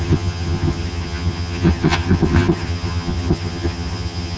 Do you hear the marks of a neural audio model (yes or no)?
yes